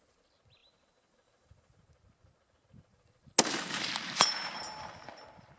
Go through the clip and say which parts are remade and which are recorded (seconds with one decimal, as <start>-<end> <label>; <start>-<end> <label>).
0.0-5.6 recorded